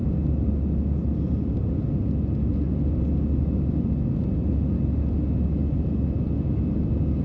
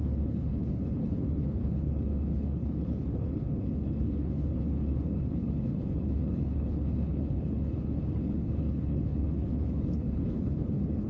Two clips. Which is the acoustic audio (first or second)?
first